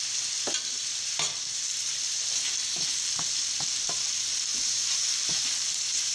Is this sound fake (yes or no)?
no